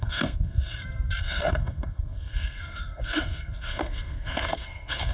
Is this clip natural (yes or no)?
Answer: no